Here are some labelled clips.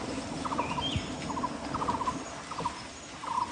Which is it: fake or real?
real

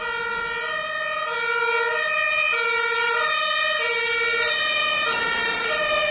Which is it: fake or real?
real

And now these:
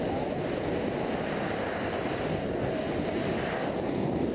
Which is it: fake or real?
real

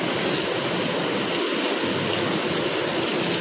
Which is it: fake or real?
real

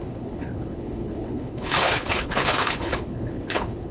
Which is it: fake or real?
fake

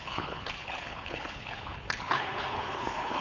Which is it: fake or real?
fake